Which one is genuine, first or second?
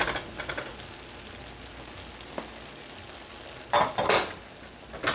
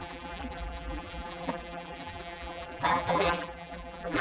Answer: first